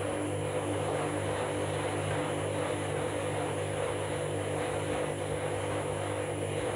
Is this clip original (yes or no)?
yes